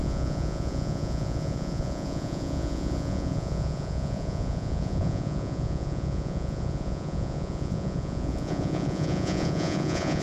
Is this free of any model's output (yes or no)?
no